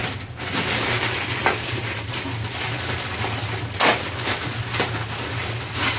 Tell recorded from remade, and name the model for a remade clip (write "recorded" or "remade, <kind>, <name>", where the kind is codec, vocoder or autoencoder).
recorded